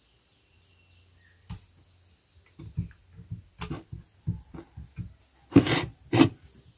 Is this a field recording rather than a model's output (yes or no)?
yes